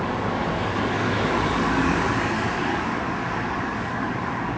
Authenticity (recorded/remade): remade